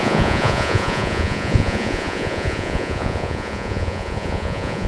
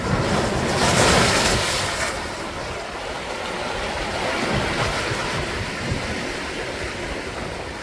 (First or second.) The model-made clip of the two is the first